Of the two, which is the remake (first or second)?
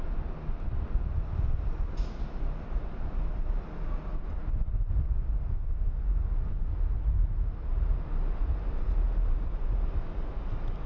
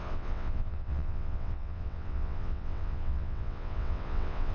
second